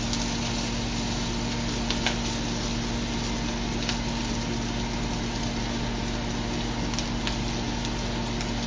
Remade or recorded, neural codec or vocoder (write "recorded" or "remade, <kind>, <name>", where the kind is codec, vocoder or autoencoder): recorded